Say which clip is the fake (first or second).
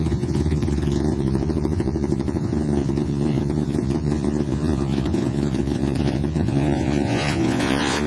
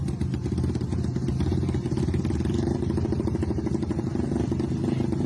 first